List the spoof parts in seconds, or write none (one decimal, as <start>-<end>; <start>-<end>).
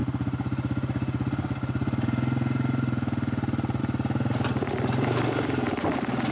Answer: none